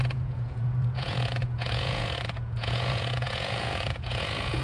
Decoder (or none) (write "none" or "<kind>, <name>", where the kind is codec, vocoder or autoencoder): vocoder, Vocos